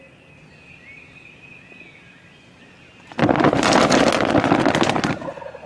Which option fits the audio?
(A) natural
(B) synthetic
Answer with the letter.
A